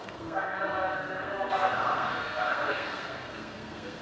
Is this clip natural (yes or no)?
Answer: no